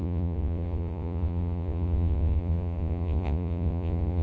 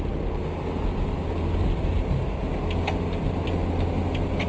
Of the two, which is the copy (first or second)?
first